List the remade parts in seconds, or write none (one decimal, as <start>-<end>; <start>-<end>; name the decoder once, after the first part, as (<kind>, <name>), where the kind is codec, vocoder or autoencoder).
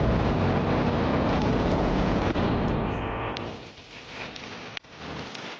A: 1.1-2.2 (vocoder, Vocos)